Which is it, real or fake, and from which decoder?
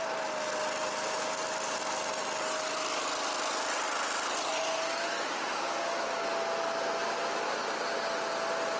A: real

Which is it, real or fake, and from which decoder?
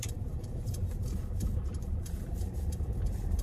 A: fake, vocoder, BigVGAN v2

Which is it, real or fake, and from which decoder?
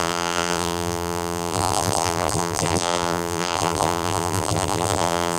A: fake, vocoder, BigVGAN v2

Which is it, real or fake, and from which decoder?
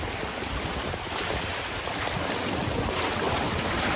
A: real